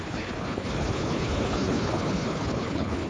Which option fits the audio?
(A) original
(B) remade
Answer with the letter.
B